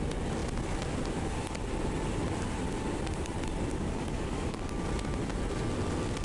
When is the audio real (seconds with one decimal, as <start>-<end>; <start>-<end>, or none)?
0.0-3.7; 4.8-6.2